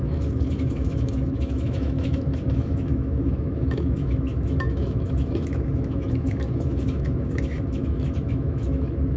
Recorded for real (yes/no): no